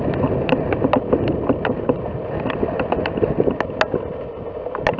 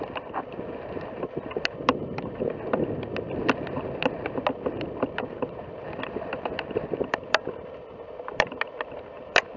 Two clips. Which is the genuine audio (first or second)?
first